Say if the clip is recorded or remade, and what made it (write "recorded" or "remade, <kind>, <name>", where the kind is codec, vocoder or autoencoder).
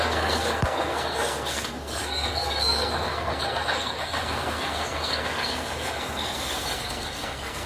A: remade, codec, SNAC